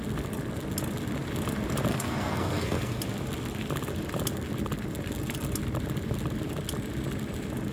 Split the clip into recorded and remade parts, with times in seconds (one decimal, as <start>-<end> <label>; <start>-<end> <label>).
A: 0.0-1.9 recorded; 1.9-3.0 remade; 3.0-7.7 recorded